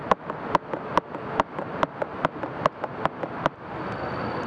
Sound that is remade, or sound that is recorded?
recorded